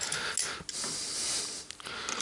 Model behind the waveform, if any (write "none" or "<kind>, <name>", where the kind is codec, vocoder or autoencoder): none